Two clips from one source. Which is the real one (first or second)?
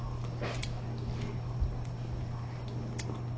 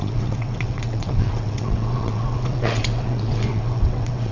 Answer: first